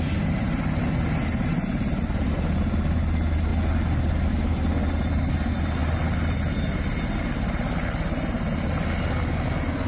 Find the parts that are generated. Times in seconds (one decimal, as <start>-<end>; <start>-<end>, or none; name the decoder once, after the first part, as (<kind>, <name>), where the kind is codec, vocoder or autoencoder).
none